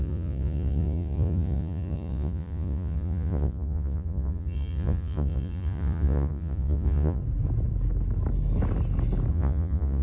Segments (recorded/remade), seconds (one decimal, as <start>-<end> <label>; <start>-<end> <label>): 0.0-7.2 remade; 7.2-9.3 recorded; 9.3-10.0 remade